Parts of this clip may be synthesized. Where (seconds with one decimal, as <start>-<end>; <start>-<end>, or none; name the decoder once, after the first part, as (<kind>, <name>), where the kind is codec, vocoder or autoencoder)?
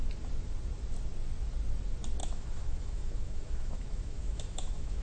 2.2-5.0 (autoencoder, DAC-VAE)